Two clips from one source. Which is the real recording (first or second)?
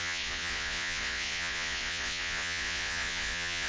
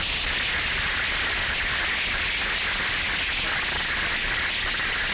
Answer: second